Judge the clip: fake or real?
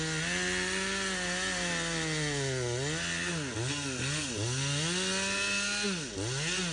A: real